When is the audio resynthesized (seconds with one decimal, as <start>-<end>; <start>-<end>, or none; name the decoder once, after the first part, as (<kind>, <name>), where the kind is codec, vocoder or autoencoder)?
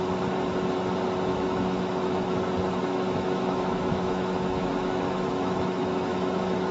1.3-2.4 (autoencoder, DAC-VAE); 2.9-6.7